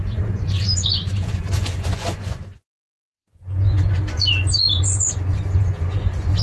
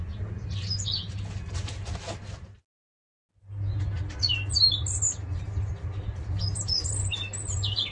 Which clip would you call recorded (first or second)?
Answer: second